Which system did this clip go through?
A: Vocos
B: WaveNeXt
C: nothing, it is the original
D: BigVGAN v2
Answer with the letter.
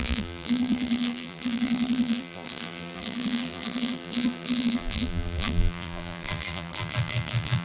D